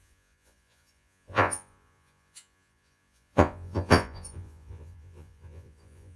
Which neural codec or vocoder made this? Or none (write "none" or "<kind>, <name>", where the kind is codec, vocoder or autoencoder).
vocoder, Vocos